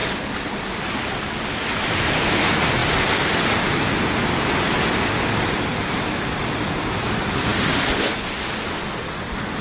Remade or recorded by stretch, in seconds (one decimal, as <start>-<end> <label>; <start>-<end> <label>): 0.0-9.6 recorded